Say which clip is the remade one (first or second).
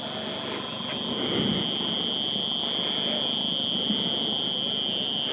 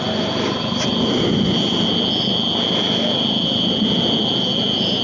second